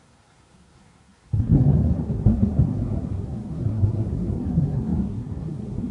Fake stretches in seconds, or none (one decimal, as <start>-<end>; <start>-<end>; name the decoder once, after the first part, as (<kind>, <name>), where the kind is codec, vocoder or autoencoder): 0.0-5.9 (codec, SNAC)

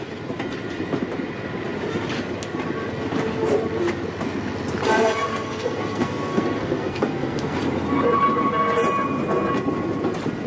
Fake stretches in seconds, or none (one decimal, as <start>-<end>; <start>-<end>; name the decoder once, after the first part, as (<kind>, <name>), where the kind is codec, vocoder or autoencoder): 5.3-7.6 (codec, SNAC)

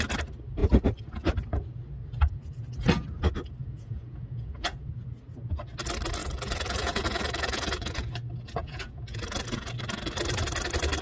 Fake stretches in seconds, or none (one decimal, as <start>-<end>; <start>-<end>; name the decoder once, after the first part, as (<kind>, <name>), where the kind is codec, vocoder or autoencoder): 3.6-4.9 (vocoder, Vocos); 6.2-8.1; 8.6-9.7

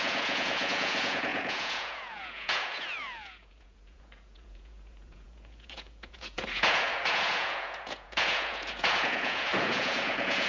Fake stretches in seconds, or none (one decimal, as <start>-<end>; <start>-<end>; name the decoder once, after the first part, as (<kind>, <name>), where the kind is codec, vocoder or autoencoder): 0.0-10.5 (vocoder, Vocos)

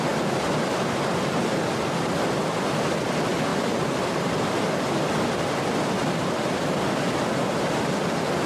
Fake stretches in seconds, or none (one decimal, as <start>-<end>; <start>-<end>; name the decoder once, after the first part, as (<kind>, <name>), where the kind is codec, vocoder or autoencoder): none

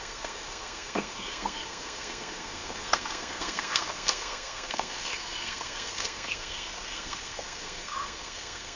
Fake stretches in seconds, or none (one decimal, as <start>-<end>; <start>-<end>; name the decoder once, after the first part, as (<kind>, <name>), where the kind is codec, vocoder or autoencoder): 0.0-8.8 (codec, SNAC)